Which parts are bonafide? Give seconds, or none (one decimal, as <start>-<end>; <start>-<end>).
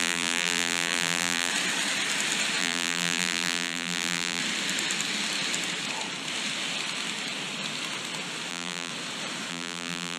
1.5-2.6; 4.4-8.5; 8.9-9.5